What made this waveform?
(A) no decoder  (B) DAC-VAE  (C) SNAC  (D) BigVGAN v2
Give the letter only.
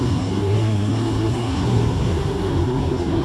C